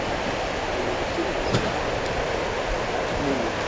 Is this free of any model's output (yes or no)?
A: yes